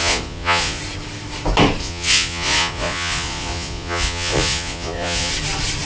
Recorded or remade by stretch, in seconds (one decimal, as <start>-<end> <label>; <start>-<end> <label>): 0.0-0.8 remade; 0.8-1.8 recorded; 1.8-5.3 remade; 5.3-5.9 recorded